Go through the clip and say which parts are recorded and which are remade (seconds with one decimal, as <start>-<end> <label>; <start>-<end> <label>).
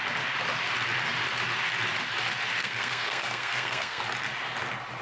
0.0-2.6 recorded; 2.6-4.0 remade; 4.0-5.0 recorded